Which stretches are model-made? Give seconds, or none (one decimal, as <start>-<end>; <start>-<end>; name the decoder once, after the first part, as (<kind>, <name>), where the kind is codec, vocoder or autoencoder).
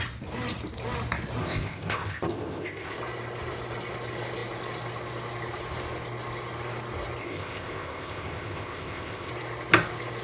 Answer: 1.4-3.0 (codec, ZipCodec); 7.2-9.3